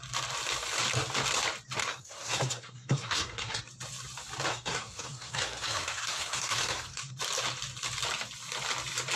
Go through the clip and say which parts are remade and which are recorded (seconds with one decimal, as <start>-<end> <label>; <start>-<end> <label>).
0.0-1.8 recorded; 1.8-3.6 remade; 3.6-4.5 recorded; 4.5-7.1 remade; 7.1-9.2 recorded